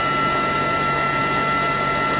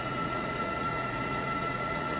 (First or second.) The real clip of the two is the first